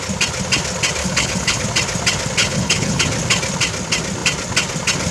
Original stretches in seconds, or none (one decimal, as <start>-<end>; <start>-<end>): 0.0-1.0; 1.6-2.4; 3.0-5.1